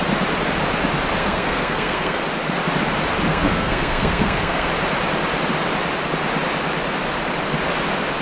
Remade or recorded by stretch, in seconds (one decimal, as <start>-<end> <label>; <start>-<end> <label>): 0.0-1.2 recorded; 1.2-2.2 remade; 2.2-3.3 recorded; 3.3-4.7 remade; 4.7-8.2 recorded